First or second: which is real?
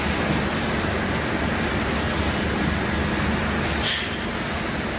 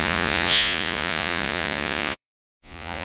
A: first